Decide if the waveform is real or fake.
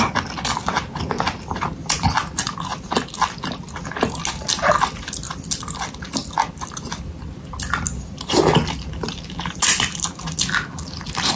real